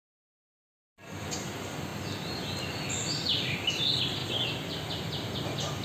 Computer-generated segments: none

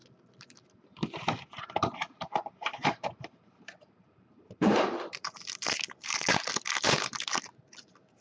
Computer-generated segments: 1.6-5.6 (vocoder, BigVGAN v2)

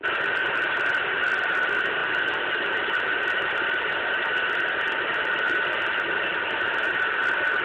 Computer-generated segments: none